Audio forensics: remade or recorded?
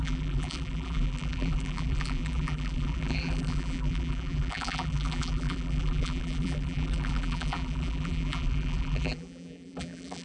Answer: remade